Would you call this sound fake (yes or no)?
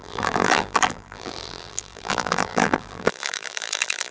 yes